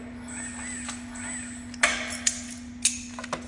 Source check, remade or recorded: recorded